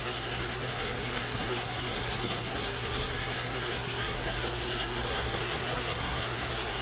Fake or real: fake